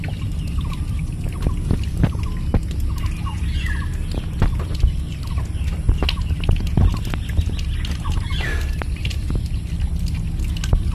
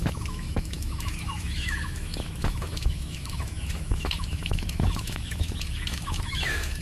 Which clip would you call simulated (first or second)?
second